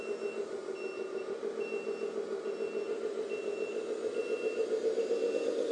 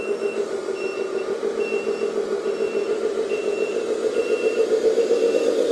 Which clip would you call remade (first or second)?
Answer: second